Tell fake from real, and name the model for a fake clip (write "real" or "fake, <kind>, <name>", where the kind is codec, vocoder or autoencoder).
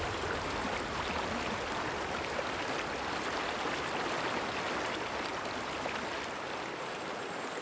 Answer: real